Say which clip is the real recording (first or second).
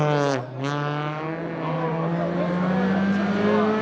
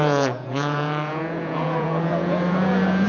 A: first